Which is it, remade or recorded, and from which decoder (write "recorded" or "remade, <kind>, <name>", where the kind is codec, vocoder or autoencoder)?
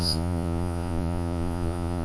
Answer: remade, vocoder, Vocos